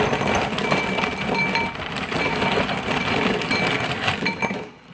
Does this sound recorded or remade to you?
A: recorded